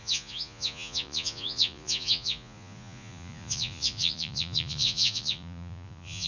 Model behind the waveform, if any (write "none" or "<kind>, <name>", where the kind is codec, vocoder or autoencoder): vocoder, Vocos